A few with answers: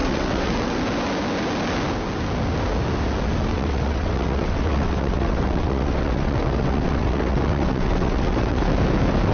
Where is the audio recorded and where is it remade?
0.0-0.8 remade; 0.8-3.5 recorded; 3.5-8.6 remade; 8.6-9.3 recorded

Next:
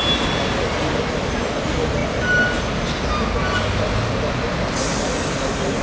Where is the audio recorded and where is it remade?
0.0-5.8 recorded

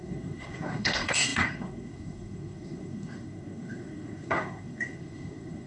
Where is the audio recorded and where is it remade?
0.0-5.7 remade